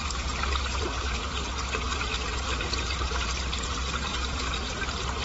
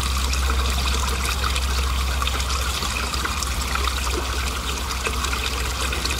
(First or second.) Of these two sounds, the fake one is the first